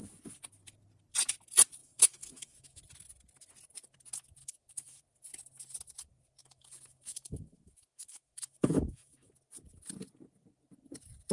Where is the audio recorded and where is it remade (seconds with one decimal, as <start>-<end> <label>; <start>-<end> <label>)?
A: 0.0-1.8 recorded; 1.8-2.8 remade; 2.8-4.4 recorded; 4.4-5.0 remade; 5.0-6.4 recorded; 6.4-9.3 remade; 9.3-11.3 recorded